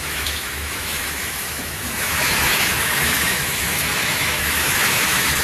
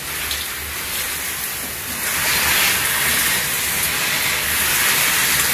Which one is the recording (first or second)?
second